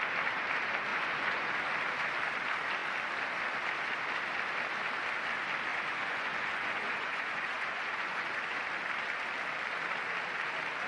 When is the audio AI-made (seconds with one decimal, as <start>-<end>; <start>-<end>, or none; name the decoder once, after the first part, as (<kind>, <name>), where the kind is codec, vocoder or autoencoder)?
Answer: 0.9-1.5 (vocoder, Vocos); 5.7-8.6